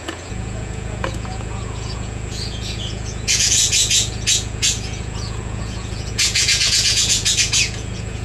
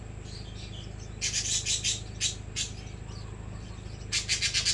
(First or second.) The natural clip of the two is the second